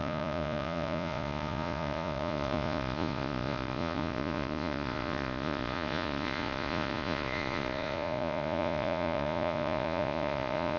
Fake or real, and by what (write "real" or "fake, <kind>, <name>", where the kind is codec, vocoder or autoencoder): fake, vocoder, Vocos